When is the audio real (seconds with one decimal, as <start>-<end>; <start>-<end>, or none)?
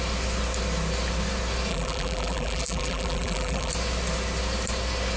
0.0-1.7; 3.7-5.2